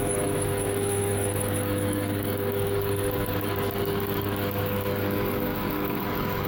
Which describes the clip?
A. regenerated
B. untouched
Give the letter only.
A